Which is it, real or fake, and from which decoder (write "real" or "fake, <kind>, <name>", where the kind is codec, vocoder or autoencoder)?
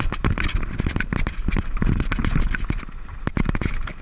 real